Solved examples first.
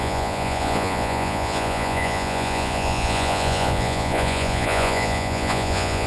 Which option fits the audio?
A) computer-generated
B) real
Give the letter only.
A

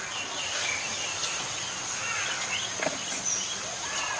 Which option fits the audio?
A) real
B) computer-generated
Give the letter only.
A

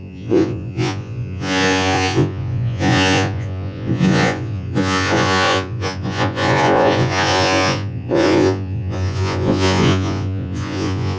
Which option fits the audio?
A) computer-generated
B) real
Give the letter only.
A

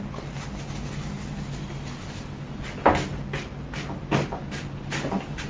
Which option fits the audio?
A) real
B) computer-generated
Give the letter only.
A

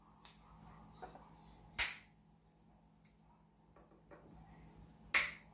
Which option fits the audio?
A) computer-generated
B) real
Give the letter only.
B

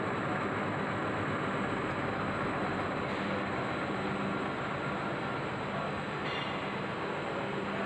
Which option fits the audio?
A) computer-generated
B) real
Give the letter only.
B